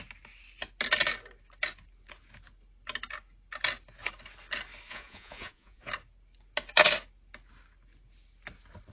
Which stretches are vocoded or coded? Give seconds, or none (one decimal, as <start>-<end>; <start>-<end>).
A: 4.9-5.9